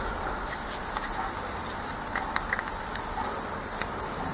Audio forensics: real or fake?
fake